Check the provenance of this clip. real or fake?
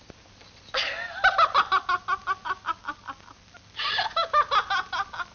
real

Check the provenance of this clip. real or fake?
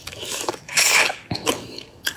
fake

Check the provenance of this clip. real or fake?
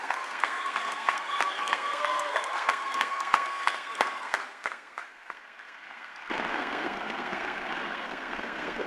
fake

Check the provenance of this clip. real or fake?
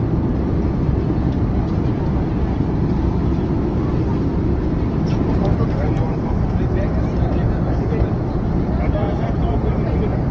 real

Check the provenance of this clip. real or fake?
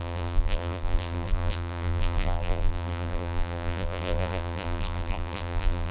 fake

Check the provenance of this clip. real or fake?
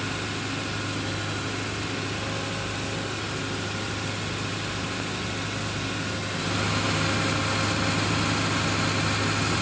real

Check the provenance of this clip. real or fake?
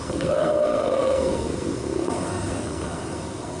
fake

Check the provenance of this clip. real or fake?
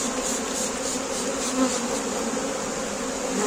real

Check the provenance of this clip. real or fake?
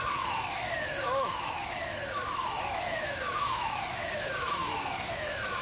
fake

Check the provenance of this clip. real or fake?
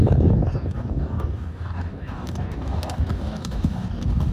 fake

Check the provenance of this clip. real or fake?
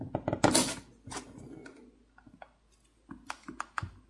real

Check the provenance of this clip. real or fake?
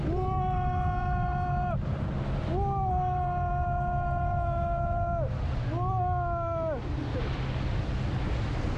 real